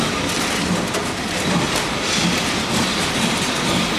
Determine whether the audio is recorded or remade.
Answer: recorded